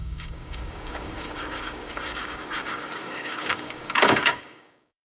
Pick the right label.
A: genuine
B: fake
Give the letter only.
B